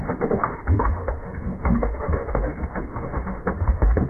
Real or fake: fake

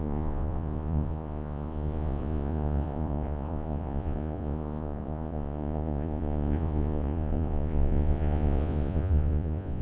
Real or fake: fake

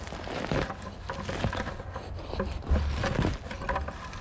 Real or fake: real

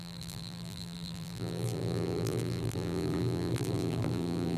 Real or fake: fake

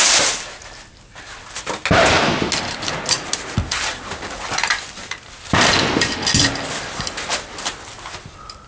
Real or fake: real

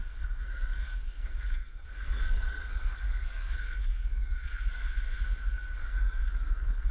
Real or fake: fake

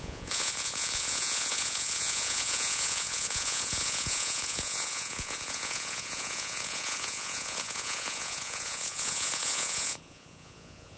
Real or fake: fake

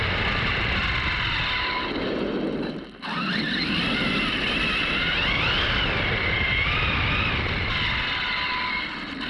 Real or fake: real